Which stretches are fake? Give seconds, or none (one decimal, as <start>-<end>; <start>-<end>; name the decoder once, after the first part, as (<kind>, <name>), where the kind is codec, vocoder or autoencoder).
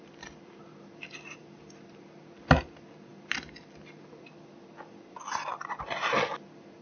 none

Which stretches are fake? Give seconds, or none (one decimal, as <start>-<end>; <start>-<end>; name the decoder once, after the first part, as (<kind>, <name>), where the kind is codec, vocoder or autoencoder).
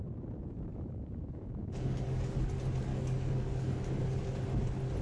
0.7-2.5 (codec, DAC); 2.9-4.4